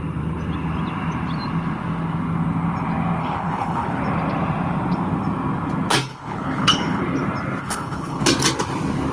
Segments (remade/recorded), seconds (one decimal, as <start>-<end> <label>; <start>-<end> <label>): 0.0-3.2 recorded; 3.2-4.0 remade; 4.0-6.1 recorded; 6.1-7.0 remade; 7.0-7.6 recorded; 7.6-8.2 remade; 8.2-9.1 recorded